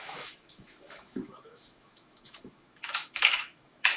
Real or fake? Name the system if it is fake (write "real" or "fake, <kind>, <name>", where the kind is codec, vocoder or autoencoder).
fake, autoencoder, DAC-VAE